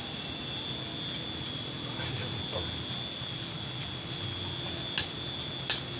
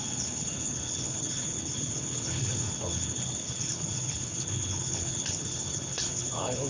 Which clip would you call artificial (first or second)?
second